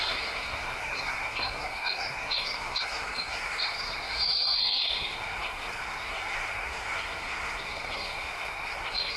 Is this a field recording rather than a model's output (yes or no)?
no